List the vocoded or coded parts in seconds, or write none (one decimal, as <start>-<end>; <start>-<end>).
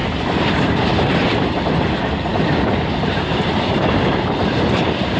none